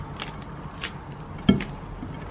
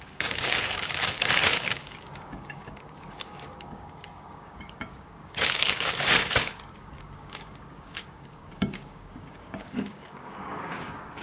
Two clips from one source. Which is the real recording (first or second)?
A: first